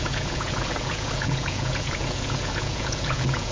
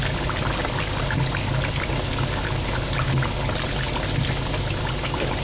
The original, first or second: second